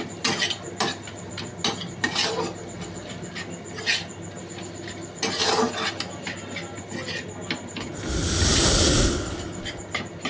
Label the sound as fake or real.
real